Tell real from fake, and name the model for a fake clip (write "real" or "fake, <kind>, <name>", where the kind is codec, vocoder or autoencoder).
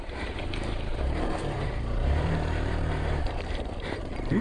fake, vocoder, BigVGAN v2